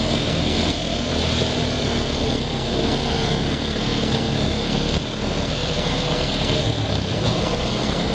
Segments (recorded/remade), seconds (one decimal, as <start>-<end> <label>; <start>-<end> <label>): 0.0-1.1 remade; 1.1-1.8 recorded; 1.8-8.1 remade